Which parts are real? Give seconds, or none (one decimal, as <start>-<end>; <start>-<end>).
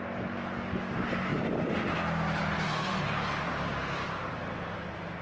0.0-5.2